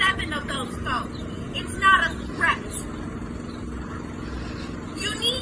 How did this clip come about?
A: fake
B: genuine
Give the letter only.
B